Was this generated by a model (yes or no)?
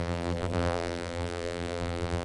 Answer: yes